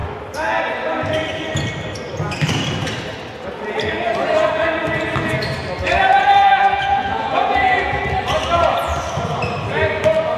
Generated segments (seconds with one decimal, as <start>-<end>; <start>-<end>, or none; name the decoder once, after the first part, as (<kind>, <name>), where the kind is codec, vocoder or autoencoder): 6.1-8.0 (vocoder, Vocos)